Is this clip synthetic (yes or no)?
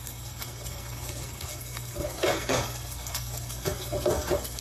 yes